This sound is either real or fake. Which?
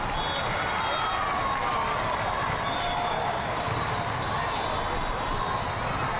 real